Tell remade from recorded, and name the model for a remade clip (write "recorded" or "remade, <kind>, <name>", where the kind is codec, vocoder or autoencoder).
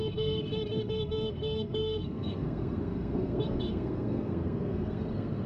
remade, codec, SNAC